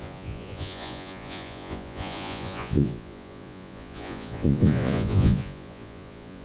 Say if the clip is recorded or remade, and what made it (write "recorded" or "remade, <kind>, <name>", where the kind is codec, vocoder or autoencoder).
remade, vocoder, Vocos